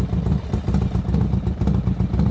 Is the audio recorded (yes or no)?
yes